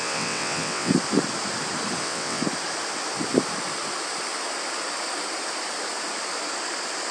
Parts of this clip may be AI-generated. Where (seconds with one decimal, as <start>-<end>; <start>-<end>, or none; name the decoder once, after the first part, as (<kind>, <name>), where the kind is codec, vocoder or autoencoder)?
0.0-0.9 (vocoder, WaveNeXt); 2.0-2.4